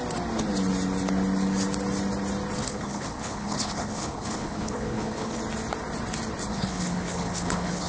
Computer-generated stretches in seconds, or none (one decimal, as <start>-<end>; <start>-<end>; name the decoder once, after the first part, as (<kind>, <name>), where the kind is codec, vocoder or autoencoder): 2.6-5.4 (codec, HILCodec); 6.5-7.9